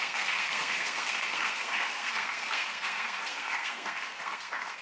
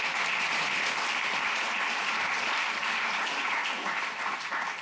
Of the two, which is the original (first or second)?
second